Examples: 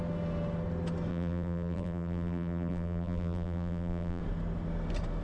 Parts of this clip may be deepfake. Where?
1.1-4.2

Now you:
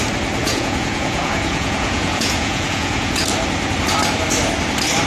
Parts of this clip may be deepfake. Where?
0.4-3.2